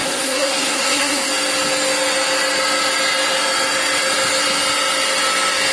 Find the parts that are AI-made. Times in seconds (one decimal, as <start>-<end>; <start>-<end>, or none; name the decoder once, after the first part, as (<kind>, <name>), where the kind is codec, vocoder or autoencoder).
0.0-1.3 (codec, SNAC)